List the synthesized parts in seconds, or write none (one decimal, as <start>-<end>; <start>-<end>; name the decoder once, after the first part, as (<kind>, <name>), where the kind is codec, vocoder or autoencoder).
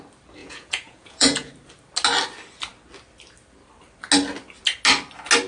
0.4-1.5 (vocoder, Vocos)